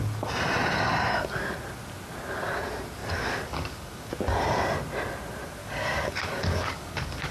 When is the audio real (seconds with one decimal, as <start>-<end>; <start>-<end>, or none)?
0.0-3.0; 4.1-5.6